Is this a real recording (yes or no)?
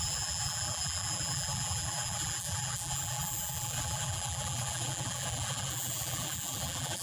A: no